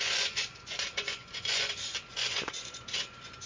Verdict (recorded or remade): remade